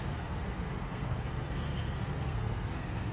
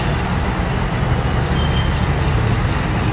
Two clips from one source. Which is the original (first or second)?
second